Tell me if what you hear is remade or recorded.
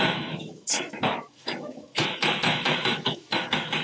remade